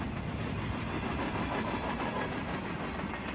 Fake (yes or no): no